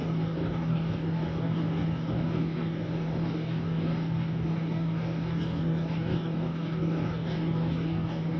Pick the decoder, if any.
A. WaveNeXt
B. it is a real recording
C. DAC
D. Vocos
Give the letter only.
C